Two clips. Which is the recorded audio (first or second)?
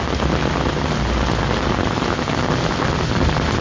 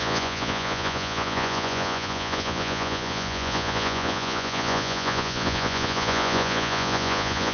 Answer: first